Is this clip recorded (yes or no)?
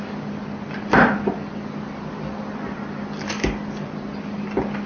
yes